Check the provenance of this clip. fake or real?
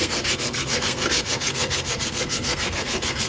fake